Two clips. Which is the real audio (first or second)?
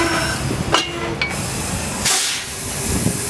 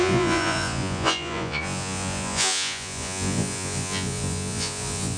first